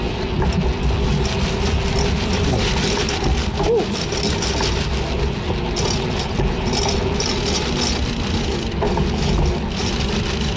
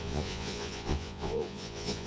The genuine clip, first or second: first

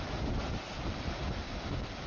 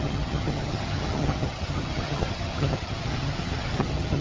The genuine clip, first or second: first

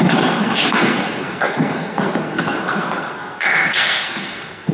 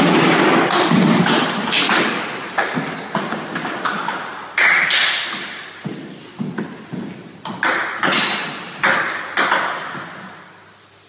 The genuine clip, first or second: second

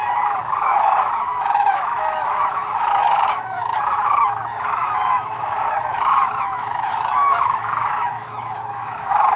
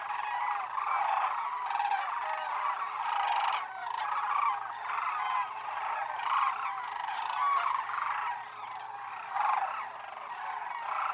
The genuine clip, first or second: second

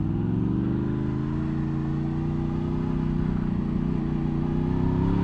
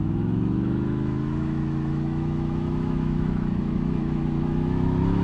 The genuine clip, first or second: first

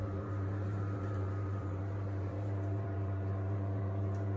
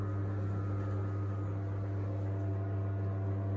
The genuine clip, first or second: second